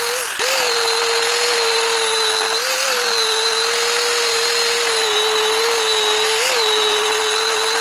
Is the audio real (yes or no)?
yes